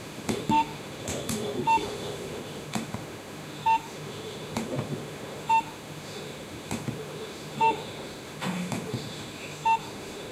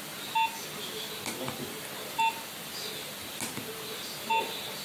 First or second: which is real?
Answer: second